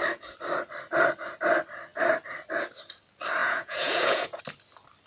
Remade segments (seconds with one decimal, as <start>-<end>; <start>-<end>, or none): 3.4-4.4